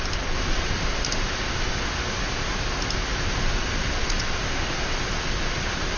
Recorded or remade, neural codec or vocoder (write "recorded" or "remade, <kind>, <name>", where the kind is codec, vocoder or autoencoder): recorded